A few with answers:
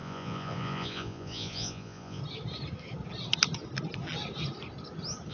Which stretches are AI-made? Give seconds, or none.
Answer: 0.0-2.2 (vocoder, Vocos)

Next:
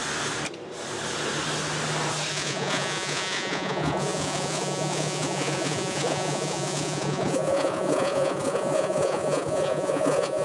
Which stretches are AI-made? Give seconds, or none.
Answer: 2.3-10.4 (vocoder, Vocos)

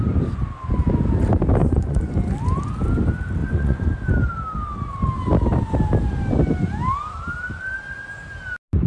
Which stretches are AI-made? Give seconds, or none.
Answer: 1.6-2.1 (vocoder, Vocos); 3.4-3.9